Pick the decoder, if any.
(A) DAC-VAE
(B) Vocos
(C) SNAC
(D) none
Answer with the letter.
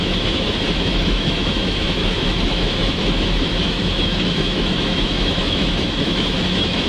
A